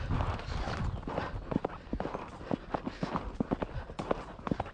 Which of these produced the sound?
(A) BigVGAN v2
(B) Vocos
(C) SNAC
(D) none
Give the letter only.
D